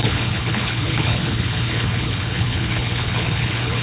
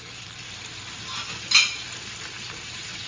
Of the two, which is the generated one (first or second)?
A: first